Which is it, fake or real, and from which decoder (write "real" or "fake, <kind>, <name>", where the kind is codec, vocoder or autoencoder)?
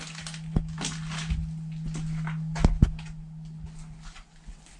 real